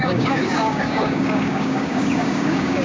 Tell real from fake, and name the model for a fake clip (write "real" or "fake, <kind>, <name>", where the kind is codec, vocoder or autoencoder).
fake, codec, DAC